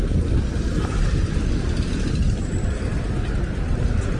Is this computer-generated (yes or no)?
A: no